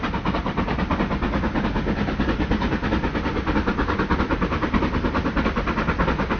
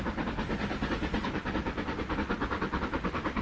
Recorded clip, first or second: first